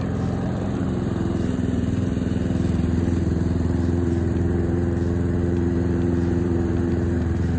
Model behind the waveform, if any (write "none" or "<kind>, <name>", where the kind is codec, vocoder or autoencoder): vocoder, BigVGAN v2